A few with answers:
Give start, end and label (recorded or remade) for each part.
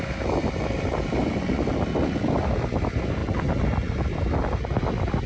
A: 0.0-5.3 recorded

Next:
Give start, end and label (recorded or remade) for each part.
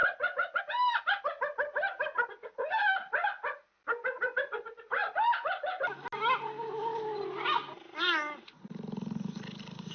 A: 0.0-9.9 recorded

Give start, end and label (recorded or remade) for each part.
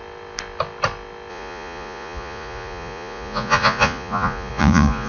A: 0.0-1.3 recorded; 1.3-5.1 remade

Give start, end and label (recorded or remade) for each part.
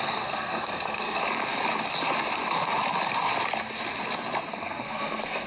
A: 0.0-1.2 remade; 1.2-4.5 recorded; 4.5-5.5 remade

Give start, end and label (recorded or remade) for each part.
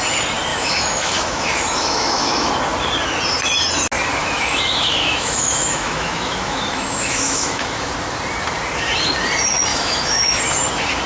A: 0.0-0.5 recorded; 0.5-2.5 remade; 2.5-4.2 recorded; 4.2-7.9 remade; 7.9-9.7 recorded; 9.7-10.4 remade; 10.4-11.1 recorded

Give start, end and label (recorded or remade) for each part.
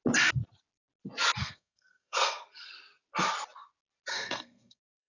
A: 0.0-1.4 recorded; 1.4-2.4 remade; 2.4-4.1 recorded; 4.1-5.1 remade